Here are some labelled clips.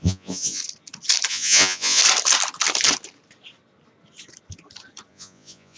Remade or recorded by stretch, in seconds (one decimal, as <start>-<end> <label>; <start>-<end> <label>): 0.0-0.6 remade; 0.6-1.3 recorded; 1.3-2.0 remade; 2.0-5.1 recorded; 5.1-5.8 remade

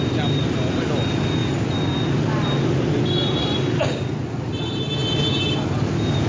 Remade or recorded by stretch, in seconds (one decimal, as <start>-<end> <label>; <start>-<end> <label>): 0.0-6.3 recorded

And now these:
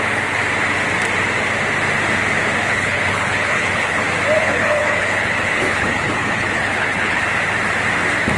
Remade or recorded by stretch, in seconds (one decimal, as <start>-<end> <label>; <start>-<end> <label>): 0.0-2.6 recorded; 2.6-4.0 remade; 4.0-4.4 recorded; 4.4-7.2 remade; 7.2-8.4 recorded